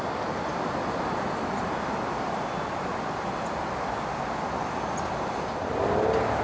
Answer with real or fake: real